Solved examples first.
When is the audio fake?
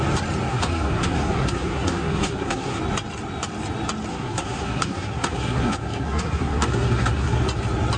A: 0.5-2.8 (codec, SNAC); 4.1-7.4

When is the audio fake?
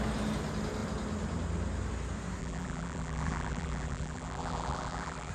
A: 2.4-5.3 (vocoder, BigVGAN v2)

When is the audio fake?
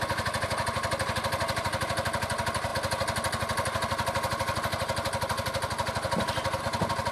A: none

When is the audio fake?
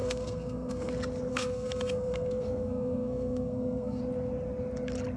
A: 0.0-0.9 (codec, SNAC); 1.3-4.0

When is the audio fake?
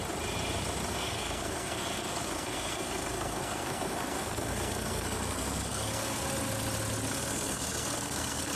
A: 0.9-6.2 (codec, SNAC); 7.1-8.6